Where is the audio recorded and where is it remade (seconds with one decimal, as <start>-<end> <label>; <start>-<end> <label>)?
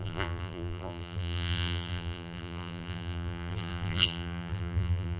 0.0-5.2 remade